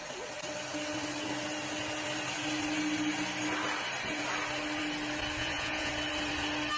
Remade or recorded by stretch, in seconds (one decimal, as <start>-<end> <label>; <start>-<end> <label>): 0.0-5.4 recorded; 5.4-5.9 remade; 5.9-6.8 recorded